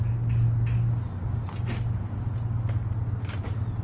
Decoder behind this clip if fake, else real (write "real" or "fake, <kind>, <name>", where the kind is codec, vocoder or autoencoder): real